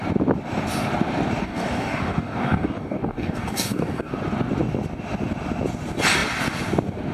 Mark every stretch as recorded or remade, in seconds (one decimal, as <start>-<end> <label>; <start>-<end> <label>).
0.0-1.4 recorded; 1.4-4.1 remade; 4.1-7.1 recorded